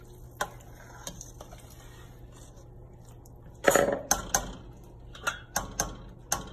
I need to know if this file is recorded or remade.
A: recorded